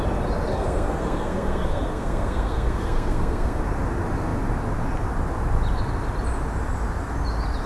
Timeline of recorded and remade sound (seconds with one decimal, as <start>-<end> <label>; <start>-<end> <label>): 0.0-0.5 recorded; 0.5-3.6 remade; 3.6-7.7 recorded